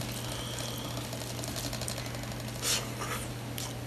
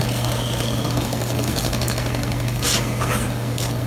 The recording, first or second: first